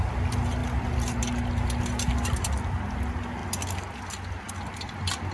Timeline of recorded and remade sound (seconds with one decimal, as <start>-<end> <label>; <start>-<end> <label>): 0.0-0.6 recorded; 0.6-1.2 remade; 1.2-5.3 recorded